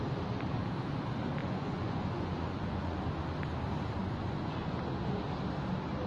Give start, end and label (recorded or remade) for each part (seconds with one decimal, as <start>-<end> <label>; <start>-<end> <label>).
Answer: 0.0-1.4 recorded; 1.4-3.0 remade; 3.0-4.0 recorded; 4.0-4.7 remade; 4.7-6.1 recorded

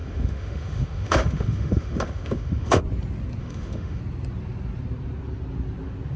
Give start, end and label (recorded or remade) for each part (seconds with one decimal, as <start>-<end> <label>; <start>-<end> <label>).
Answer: 0.0-2.8 remade; 2.8-3.4 recorded; 3.4-4.0 remade; 4.0-6.2 recorded